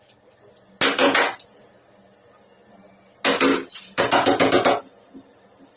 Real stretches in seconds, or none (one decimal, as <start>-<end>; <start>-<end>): 0.0-1.0; 1.7-3.5; 5.1-5.8